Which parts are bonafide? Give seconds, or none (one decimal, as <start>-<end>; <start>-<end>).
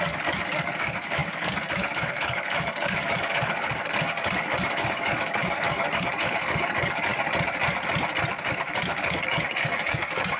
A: 7.1-8.5